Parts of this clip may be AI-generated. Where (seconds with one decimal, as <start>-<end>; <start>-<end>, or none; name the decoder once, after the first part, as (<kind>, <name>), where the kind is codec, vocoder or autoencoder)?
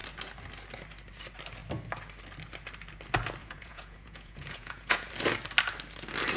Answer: 3.4-5.1 (vocoder, Vocos)